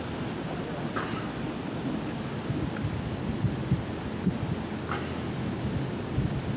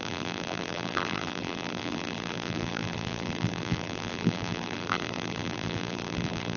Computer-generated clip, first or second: second